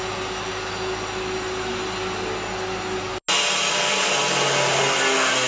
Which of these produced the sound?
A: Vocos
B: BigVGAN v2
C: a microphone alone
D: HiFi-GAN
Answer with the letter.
C